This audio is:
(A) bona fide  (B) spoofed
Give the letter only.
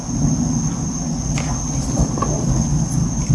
A